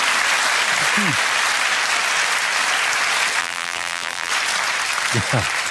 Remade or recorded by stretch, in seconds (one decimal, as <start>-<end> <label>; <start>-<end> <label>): 0.0-3.4 recorded; 3.4-4.3 remade; 4.3-5.7 recorded